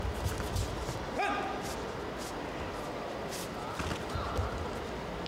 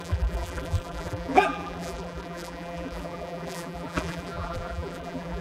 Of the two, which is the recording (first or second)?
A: first